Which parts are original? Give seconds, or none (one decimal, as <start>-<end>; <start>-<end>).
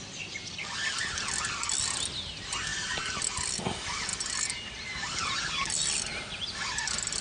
0.0-7.2